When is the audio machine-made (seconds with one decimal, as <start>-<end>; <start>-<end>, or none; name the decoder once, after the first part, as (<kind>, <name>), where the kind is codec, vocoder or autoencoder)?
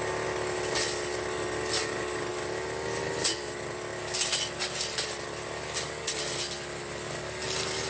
none